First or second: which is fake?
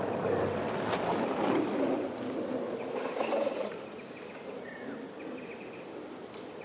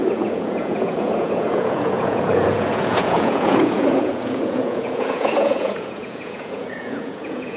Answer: second